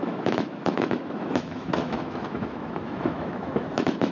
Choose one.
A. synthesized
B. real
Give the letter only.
A